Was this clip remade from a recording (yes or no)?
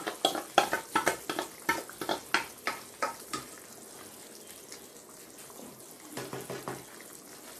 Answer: no